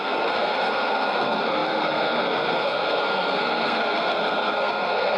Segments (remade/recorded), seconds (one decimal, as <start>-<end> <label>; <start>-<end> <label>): 0.0-5.2 remade